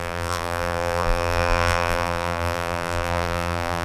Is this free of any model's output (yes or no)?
no